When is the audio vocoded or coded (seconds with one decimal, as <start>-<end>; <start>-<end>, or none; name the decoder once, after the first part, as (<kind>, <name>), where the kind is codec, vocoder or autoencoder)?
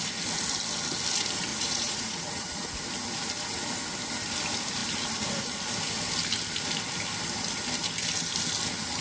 1.5-2.8 (vocoder, Vocos)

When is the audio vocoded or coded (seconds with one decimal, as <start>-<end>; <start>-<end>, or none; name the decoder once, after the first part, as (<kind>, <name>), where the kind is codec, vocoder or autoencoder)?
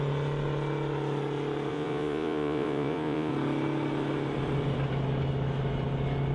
1.7-3.3 (vocoder, Vocos)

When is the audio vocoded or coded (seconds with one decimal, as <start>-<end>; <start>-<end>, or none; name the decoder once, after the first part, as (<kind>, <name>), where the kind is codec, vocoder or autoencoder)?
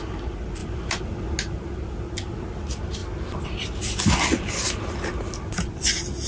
none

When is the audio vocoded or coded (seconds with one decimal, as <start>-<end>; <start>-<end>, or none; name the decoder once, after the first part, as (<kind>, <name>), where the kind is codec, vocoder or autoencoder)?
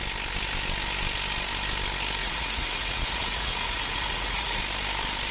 2.2-4.6 (vocoder, Vocos)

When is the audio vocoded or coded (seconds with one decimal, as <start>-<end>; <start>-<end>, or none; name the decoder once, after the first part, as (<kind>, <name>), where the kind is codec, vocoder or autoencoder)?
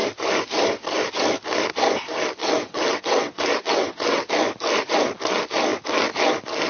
2.4-4.3 (vocoder, WaveNeXt)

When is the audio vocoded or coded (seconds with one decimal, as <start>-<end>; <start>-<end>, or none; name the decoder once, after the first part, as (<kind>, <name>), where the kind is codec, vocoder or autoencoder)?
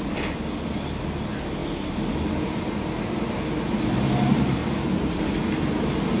4.6-5.2 (vocoder, BigVGAN v2)